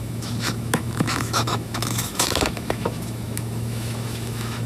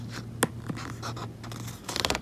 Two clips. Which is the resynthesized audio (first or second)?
first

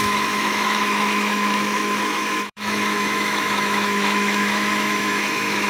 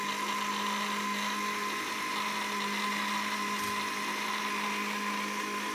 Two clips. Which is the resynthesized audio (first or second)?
first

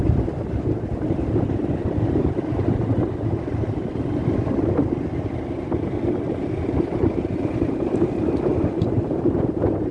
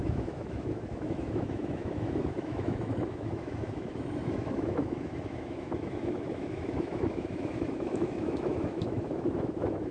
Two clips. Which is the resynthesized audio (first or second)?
second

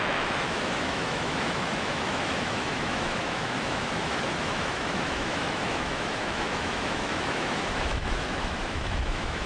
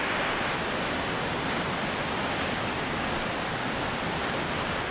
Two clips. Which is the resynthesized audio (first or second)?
first